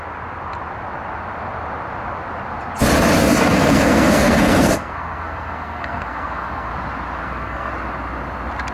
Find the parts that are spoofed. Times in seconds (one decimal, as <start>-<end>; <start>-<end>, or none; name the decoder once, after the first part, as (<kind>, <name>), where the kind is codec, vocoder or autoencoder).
3.2-6.7 (codec, SNAC); 7.2-7.7